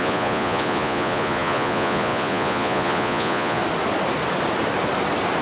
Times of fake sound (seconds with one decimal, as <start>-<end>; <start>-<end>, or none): 0.0-3.6